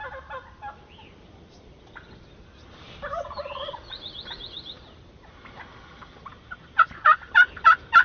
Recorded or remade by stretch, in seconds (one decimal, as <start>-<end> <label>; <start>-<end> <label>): 0.0-8.0 recorded